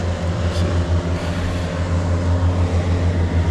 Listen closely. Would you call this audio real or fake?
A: real